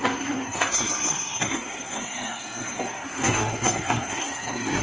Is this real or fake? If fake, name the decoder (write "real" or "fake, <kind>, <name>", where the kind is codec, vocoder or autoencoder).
fake, codec, SNAC